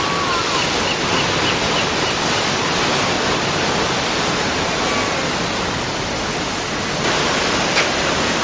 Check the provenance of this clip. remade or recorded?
recorded